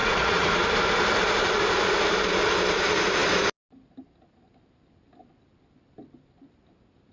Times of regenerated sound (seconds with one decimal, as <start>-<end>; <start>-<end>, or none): 0.0-0.5